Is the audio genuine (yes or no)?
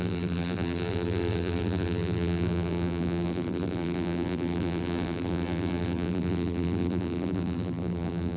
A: no